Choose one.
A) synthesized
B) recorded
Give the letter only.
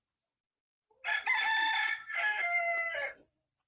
B